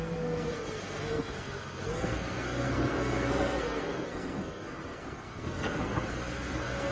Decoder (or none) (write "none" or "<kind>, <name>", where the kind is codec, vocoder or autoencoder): codec, SNAC